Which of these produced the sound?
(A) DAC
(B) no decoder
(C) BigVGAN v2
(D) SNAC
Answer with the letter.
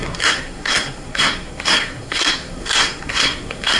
D